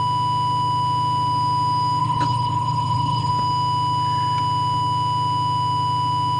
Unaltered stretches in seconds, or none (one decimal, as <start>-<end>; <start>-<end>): 0.0-2.0; 3.3-6.4